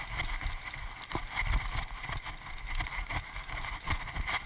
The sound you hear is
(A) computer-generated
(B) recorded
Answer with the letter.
B